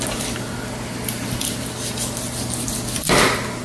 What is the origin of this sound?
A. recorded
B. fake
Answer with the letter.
A